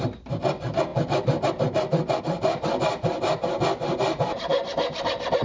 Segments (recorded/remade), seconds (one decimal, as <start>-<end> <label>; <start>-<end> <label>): 0.0-5.4 recorded